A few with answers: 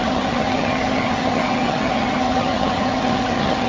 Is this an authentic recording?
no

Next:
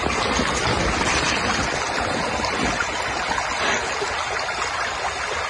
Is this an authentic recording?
yes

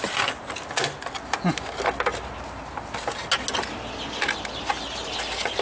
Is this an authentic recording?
yes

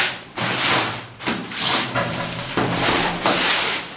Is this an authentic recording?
no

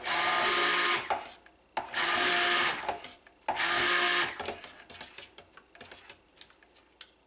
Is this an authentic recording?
yes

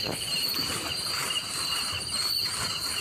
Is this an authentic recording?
no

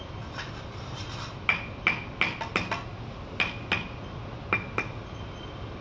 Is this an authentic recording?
yes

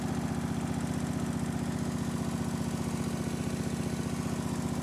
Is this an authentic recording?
yes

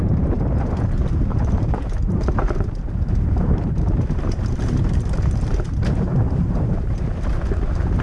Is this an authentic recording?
no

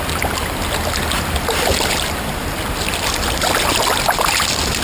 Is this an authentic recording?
yes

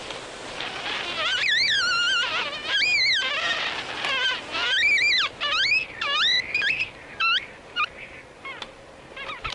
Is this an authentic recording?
yes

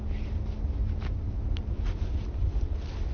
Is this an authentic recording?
yes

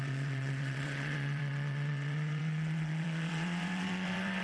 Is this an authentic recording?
no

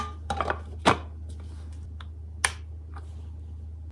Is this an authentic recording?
yes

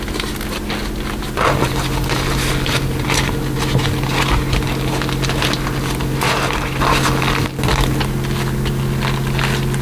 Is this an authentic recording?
yes